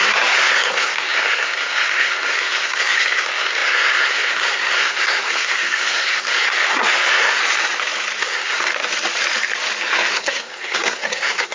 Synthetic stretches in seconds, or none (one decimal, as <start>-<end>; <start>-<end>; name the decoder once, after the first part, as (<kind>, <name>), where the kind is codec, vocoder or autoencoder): 0.0-7.4 (codec, SNAC); 8.2-8.7; 10.1-11.5